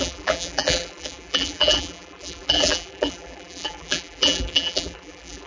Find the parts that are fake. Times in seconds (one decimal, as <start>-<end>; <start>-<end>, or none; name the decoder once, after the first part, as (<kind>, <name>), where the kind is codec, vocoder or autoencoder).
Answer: 0.0-5.5 (vocoder, BigVGAN v2)

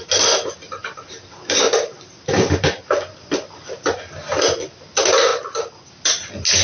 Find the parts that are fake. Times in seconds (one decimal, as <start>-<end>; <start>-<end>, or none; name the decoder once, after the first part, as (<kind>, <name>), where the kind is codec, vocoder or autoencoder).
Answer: none

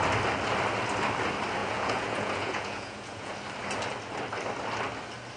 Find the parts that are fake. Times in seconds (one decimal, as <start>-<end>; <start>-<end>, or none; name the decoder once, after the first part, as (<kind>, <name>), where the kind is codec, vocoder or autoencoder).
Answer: 1.6-3.3 (vocoder, Vocos)

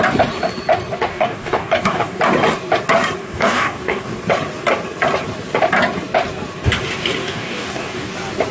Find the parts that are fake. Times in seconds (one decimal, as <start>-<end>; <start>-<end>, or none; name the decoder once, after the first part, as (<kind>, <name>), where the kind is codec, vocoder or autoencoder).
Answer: 1.1-2.2 (codec, DAC); 3.2-4.2; 7.2-8.1

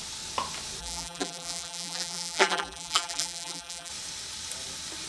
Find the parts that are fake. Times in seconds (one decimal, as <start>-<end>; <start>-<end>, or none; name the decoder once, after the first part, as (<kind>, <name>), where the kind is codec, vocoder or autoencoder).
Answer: 0.8-3.9 (vocoder, BigVGAN v2)

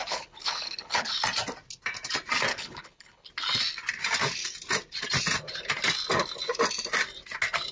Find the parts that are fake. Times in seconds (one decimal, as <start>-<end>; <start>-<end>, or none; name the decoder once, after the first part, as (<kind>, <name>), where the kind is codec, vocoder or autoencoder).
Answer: 0.0-1.1 (codec, HILCodec); 2.5-3.3

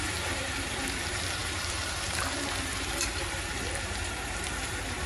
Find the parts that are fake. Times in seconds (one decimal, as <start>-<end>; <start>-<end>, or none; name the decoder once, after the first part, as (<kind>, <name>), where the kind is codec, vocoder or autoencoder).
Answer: 0.0-5.1 (vocoder, BigVGAN v2)

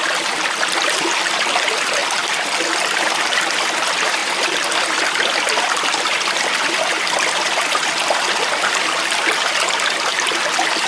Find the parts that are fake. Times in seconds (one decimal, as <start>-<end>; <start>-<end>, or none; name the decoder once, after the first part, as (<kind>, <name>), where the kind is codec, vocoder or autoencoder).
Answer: none